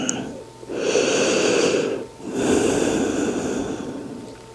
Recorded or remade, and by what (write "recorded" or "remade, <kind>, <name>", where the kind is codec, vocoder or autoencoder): recorded